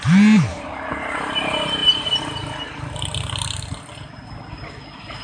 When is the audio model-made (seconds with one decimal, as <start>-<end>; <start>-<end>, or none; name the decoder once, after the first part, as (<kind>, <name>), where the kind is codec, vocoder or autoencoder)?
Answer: none